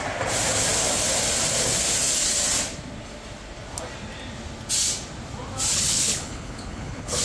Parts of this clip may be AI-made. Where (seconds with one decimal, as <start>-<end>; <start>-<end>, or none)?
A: 5.7-7.2